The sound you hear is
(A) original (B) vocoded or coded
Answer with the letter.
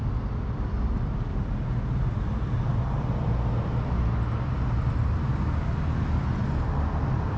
A